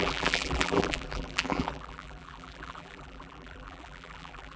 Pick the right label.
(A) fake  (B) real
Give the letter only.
A